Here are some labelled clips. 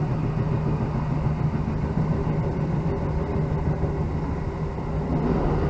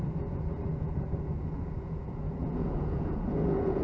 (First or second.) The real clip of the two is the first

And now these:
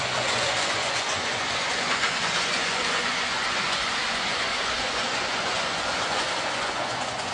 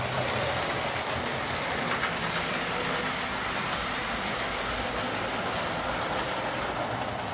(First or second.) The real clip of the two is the second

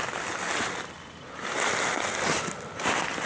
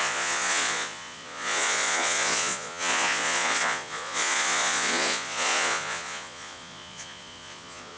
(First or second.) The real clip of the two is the first